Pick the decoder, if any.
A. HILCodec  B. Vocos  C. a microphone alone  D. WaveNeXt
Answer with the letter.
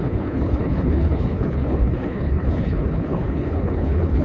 A